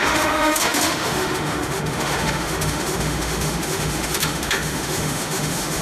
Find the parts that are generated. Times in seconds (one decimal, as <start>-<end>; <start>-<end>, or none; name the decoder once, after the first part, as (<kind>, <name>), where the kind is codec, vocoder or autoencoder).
0.0-5.8 (autoencoder, DAC-VAE)